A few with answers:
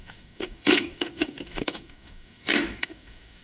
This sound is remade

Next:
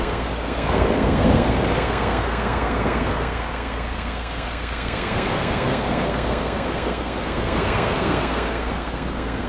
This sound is remade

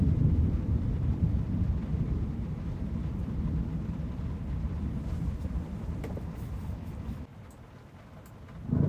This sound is recorded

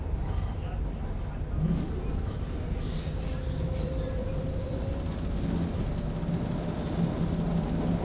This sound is recorded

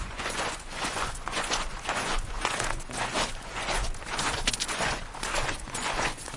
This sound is remade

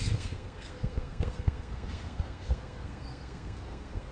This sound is remade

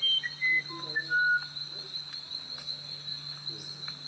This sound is recorded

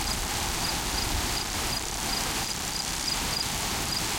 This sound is recorded